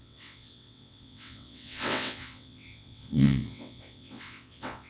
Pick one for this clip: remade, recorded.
remade